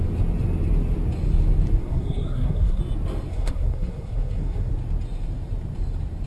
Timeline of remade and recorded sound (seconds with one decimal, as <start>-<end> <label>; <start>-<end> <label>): 0.0-1.8 recorded; 1.8-2.8 remade; 2.8-3.3 recorded; 3.3-4.7 remade; 4.7-6.3 recorded